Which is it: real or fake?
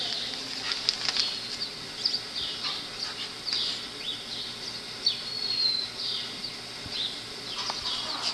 real